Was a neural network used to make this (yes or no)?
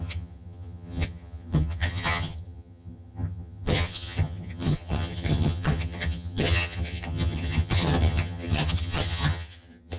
yes